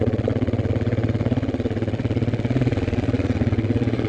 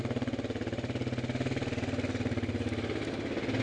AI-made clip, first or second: first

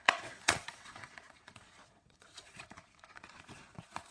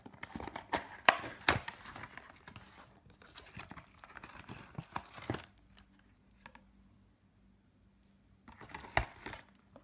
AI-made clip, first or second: first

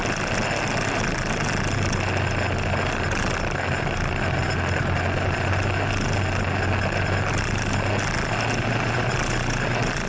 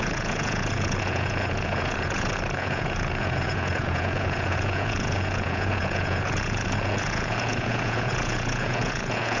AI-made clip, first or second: second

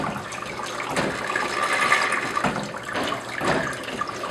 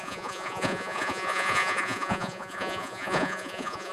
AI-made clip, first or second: second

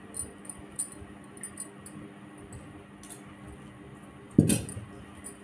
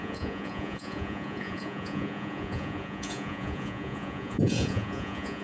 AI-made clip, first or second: second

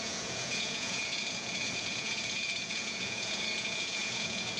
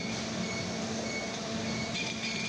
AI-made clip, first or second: first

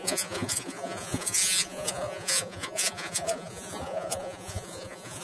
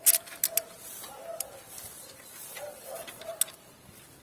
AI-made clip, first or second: first